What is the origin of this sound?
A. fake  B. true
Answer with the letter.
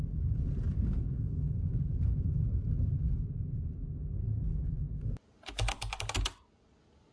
B